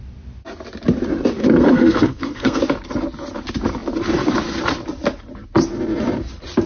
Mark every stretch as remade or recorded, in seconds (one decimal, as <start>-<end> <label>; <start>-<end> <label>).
0.0-1.4 recorded; 1.4-2.6 remade; 2.6-6.7 recorded